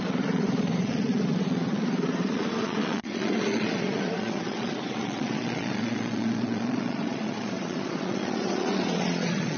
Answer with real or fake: fake